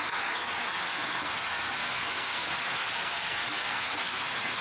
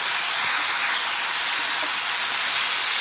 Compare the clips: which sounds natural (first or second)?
second